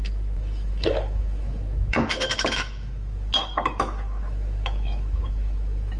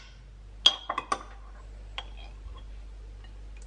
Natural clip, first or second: second